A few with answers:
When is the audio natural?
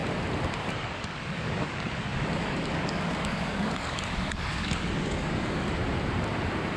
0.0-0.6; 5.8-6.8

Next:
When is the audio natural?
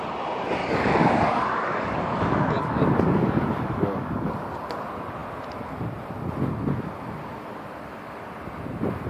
0.0-0.6; 4.3-9.1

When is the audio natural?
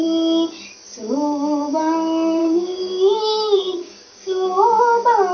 0.0-1.0; 1.8-2.4; 4.8-5.3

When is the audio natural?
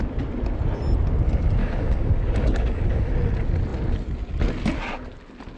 0.0-1.6; 3.1-5.6